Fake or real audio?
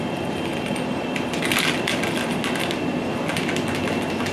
real